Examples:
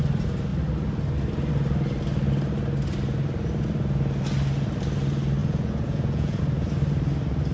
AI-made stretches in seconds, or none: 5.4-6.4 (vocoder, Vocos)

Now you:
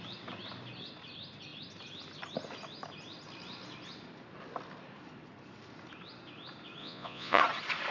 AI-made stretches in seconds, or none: 6.8-7.4 (vocoder, Vocos)

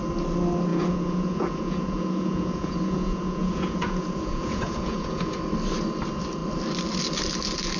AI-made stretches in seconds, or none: 0.7-5.4 (vocoder, Vocos)

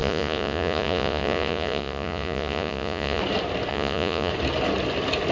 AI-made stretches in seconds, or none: 0.0-3.2 (vocoder, Vocos); 3.7-4.3